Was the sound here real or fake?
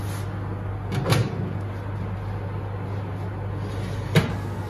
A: real